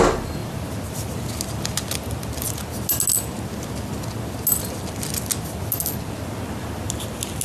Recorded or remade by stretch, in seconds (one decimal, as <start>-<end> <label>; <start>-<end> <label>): 0.0-7.4 recorded